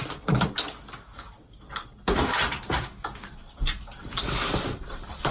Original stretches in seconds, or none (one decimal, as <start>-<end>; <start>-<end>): 0.0-1.9